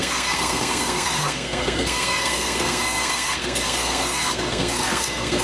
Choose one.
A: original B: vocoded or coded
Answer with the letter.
B